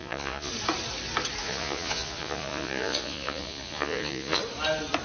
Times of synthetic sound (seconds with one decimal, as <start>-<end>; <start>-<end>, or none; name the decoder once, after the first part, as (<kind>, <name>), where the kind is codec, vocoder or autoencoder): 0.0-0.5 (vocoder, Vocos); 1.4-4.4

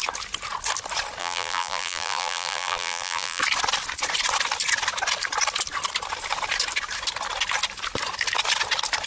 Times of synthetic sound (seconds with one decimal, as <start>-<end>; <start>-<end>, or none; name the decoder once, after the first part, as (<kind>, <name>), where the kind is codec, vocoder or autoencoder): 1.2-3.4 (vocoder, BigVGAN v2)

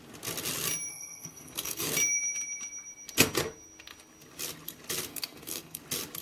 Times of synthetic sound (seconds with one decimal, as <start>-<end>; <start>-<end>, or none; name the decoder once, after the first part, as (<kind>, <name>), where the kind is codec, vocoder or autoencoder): 0.9-1.9 (codec, SNAC); 5.1-5.8

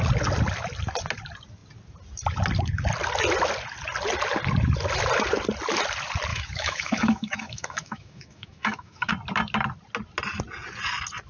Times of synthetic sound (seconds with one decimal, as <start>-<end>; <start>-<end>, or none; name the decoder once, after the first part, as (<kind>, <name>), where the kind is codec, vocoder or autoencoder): 6.3-9.1 (autoencoder, DAC-VAE)